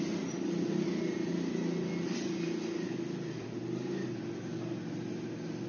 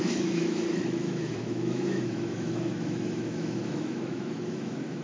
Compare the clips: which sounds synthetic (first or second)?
second